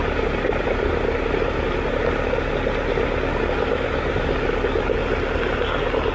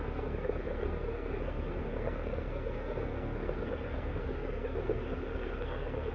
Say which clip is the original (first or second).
first